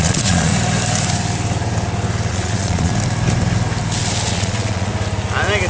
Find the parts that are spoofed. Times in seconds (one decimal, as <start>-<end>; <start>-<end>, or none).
0.0-0.5; 2.3-2.9; 4.3-4.9